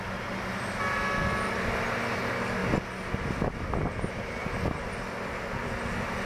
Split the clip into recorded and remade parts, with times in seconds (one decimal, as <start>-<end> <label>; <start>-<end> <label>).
0.0-6.3 recorded